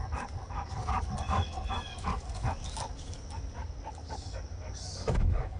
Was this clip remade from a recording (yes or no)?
yes